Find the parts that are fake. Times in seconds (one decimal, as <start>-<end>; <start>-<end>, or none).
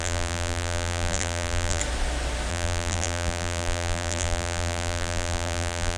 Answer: 0.0-1.8; 2.5-6.0